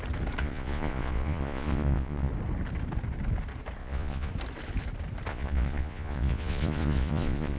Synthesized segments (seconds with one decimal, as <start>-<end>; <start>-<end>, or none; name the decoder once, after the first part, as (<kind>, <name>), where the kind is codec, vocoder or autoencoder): 0.4-2.3 (vocoder, Vocos); 3.8-4.3; 5.3-7.6